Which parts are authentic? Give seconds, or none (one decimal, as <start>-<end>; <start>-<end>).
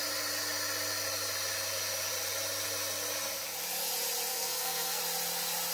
0.0-4.3; 5.0-5.7